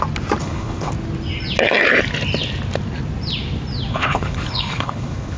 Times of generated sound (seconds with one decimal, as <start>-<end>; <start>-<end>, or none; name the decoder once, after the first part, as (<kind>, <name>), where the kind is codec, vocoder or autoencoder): 0.4-0.9 (codec, HILCodec); 3.9-5.4